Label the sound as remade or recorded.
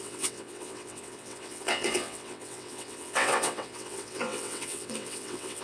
remade